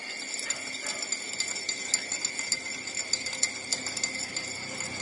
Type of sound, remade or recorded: recorded